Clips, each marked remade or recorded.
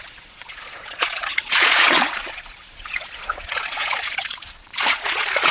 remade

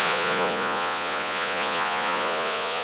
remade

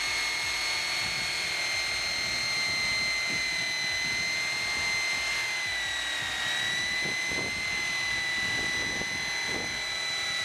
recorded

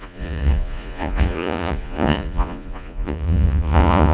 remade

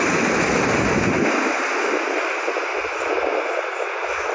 recorded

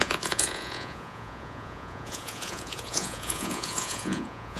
remade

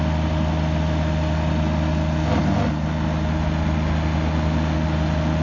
recorded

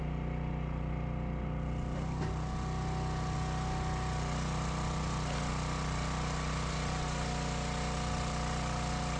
recorded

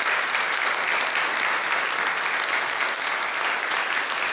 recorded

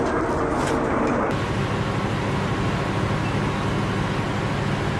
recorded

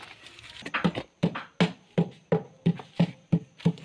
recorded